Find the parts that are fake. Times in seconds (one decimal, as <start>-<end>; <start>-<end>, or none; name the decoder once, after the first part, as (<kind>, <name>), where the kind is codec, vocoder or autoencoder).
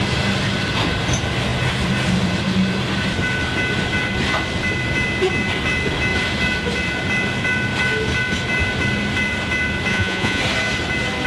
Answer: 9.9-10.4 (vocoder, Vocos)